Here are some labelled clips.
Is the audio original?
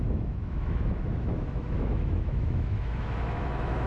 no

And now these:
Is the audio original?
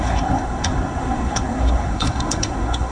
no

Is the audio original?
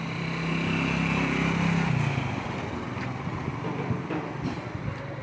yes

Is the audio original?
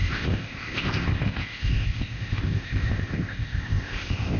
no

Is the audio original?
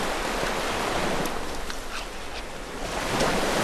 yes